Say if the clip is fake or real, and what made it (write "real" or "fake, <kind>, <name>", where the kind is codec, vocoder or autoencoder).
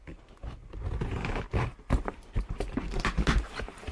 real